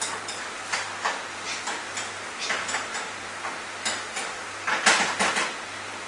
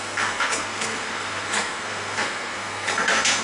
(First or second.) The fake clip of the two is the second